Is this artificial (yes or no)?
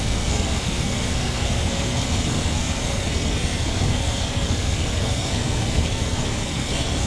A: yes